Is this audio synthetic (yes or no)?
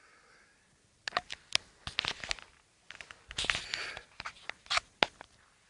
no